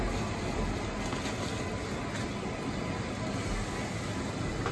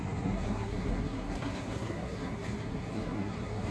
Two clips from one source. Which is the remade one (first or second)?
second